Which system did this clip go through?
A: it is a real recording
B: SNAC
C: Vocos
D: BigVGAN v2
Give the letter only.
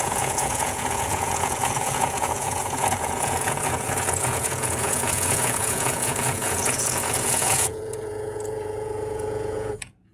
C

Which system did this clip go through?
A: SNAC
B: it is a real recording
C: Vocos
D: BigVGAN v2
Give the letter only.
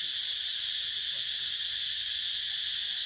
B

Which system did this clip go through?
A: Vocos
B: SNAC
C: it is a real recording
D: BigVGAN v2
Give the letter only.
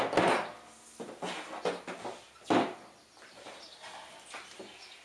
C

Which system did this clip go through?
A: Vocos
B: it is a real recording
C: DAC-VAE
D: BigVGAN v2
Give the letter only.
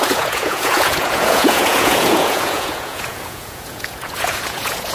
A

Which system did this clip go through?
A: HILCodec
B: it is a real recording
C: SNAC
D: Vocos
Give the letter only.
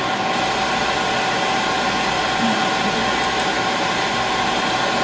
B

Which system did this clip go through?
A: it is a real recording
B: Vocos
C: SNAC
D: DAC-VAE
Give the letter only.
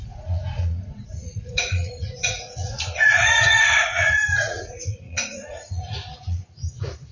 B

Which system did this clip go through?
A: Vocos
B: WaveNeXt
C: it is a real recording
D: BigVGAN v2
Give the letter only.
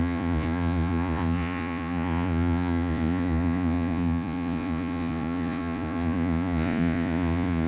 A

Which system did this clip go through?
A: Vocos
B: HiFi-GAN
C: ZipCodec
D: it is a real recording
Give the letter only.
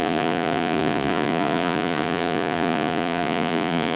A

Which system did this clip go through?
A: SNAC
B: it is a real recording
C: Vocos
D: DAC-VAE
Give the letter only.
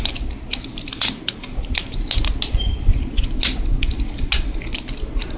B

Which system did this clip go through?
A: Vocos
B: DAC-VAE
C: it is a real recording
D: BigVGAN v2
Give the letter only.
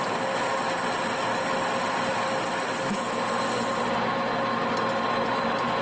C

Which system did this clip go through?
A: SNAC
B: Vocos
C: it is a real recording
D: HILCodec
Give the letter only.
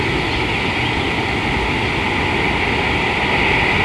C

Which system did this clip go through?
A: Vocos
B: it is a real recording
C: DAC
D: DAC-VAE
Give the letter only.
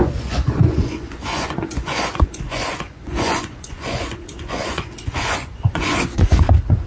A